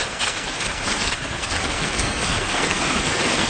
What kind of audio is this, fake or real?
fake